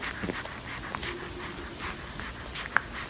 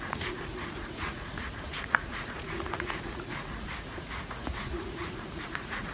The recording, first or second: first